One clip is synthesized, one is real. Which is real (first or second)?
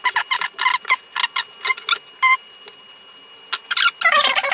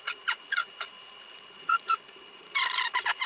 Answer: first